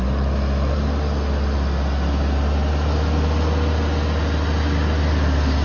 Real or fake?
real